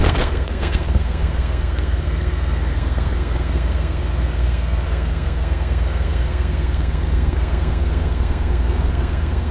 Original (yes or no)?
no